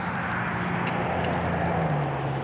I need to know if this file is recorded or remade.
recorded